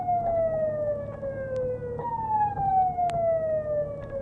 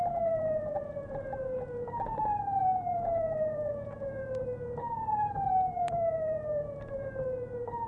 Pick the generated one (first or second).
second